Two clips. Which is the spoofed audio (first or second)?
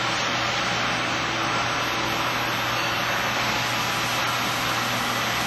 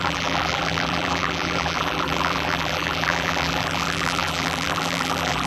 second